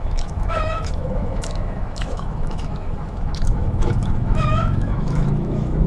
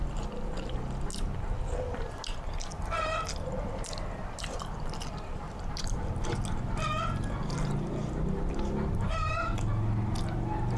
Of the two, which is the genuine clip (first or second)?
second